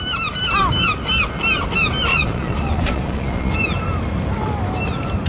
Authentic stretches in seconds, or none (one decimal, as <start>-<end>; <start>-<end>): 0.0-2.1; 3.5-5.3